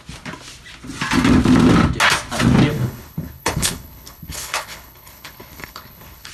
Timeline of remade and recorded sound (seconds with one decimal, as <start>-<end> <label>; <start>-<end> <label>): 0.0-2.7 recorded; 2.7-6.3 remade